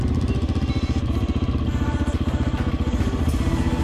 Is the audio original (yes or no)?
yes